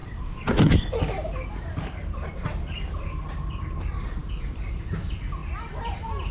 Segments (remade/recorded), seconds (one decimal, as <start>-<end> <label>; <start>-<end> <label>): 0.0-3.8 recorded; 3.8-5.4 remade; 5.4-6.3 recorded